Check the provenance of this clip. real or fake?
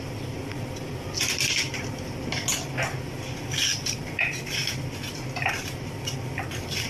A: real